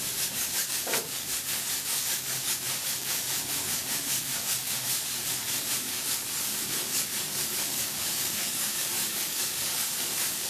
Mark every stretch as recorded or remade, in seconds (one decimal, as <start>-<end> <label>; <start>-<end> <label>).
0.0-10.5 remade